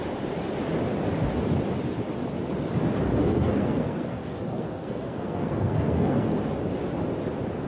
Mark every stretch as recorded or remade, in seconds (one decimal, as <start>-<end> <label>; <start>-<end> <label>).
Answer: 0.0-3.2 recorded; 3.2-6.4 remade; 6.4-7.7 recorded